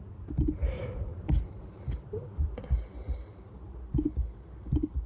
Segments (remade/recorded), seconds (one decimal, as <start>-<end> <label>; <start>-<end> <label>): 0.0-1.1 recorded; 1.1-1.6 remade; 1.6-5.1 recorded